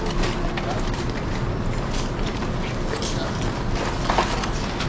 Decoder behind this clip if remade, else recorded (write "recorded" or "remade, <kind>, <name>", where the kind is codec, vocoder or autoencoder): recorded